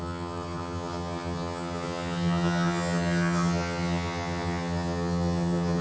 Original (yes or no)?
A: no